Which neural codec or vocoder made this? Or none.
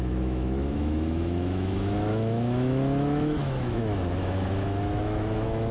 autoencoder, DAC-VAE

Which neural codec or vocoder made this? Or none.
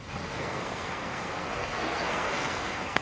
codec, SNAC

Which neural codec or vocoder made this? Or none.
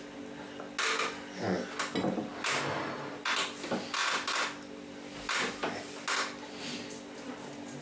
none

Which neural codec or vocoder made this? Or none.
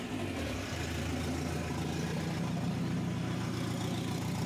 none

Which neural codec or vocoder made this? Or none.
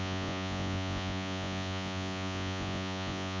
vocoder, Vocos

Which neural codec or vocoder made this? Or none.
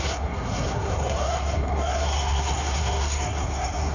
codec, SNAC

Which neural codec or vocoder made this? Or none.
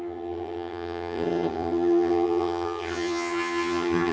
vocoder, HiFi-GAN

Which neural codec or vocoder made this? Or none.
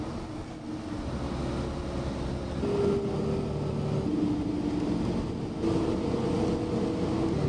none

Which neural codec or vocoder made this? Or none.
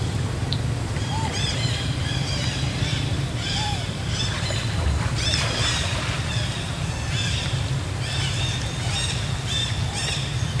vocoder, BigVGAN v2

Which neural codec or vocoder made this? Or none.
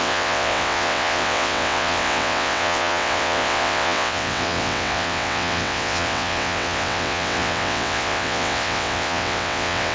vocoder, WaveNeXt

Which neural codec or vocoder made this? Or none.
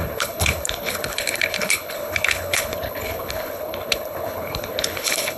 codec, HILCodec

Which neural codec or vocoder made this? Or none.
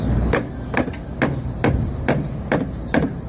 none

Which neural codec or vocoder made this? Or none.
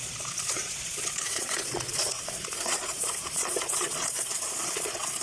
vocoder, Vocos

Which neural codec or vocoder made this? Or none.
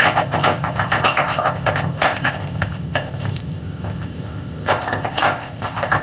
codec, ZipCodec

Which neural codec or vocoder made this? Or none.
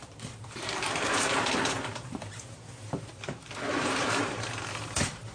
vocoder, BigVGAN v2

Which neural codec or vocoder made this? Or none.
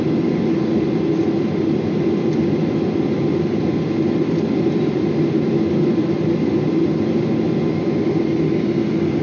none